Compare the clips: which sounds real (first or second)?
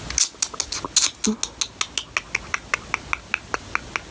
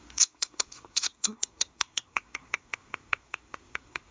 first